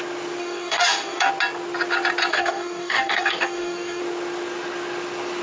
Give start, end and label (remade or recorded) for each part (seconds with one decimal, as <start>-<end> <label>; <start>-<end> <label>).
0.0-0.4 recorded; 0.4-1.3 remade; 1.3-2.3 recorded; 2.3-4.0 remade; 4.0-5.4 recorded